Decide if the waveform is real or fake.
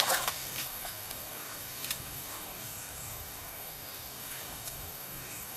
fake